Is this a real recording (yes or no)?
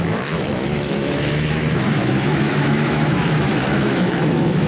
no